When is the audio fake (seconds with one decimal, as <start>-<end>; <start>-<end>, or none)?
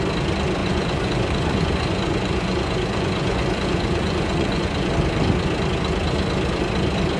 0.6-4.9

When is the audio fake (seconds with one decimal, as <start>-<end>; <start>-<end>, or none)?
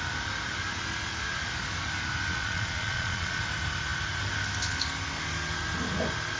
2.3-3.4